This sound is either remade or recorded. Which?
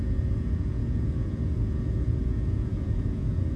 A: remade